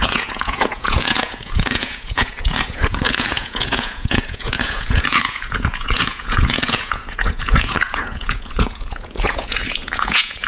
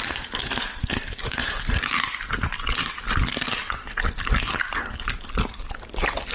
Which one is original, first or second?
second